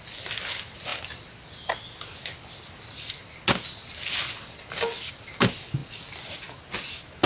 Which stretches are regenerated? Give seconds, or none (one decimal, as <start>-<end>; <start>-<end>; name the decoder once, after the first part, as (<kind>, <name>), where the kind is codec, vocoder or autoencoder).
none